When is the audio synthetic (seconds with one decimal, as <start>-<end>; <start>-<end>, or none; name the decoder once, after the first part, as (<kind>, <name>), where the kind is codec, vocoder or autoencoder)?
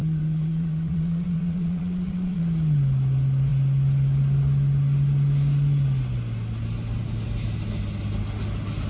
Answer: 0.0-2.4 (vocoder, WaveNeXt)